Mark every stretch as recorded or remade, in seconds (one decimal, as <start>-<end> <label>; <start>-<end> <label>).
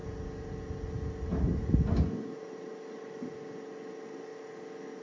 0.0-5.0 recorded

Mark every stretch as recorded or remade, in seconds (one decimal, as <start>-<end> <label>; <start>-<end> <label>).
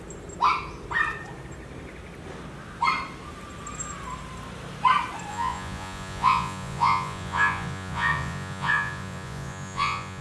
0.0-5.3 recorded; 5.3-10.2 remade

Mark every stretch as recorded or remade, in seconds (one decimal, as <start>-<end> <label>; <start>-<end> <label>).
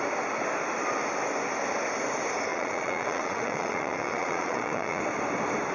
0.0-2.5 recorded; 2.5-5.0 remade; 5.0-5.7 recorded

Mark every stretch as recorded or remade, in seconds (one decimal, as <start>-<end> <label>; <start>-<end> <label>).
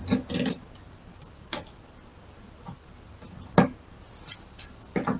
0.0-5.2 recorded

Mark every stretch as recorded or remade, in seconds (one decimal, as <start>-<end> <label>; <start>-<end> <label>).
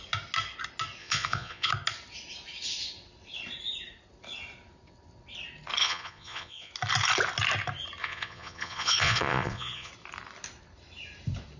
0.0-1.0 recorded; 1.0-1.7 remade; 1.7-5.8 recorded; 5.8-6.7 remade; 6.7-8.0 recorded; 8.0-9.9 remade; 9.9-11.6 recorded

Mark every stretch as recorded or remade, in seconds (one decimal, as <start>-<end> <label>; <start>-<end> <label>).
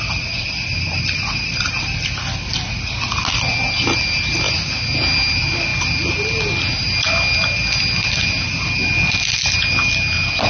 0.0-10.5 recorded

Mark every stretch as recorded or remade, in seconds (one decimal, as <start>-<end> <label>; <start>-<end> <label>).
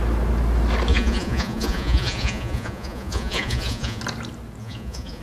0.0-0.9 recorded; 0.9-4.0 remade; 4.0-4.6 recorded; 4.6-5.2 remade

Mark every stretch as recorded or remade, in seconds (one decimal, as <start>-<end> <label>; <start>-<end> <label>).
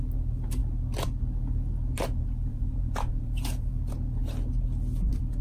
0.0-2.5 recorded; 2.5-3.8 remade; 3.8-5.4 recorded